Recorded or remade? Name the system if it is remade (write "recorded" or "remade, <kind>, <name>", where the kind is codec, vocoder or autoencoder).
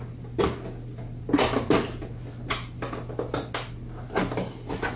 recorded